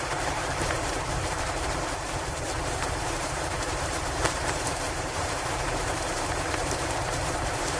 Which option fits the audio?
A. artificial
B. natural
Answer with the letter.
A